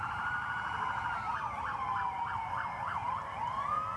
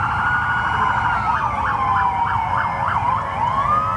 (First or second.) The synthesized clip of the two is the first